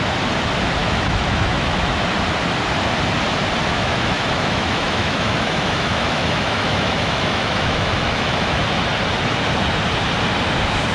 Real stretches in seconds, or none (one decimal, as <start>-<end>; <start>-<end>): 0.0-0.8; 2.0-3.7; 8.6-10.9